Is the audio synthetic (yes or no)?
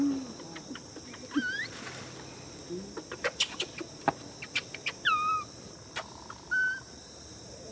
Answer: no